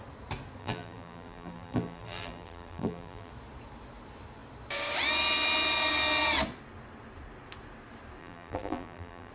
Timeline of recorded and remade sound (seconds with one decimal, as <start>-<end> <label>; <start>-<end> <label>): 0.0-0.6 recorded; 0.6-3.3 remade; 3.3-8.2 recorded; 8.2-9.3 remade